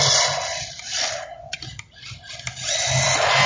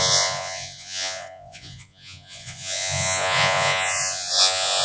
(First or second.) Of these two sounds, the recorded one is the first